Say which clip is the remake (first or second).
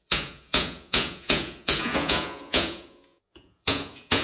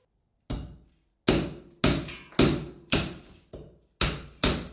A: first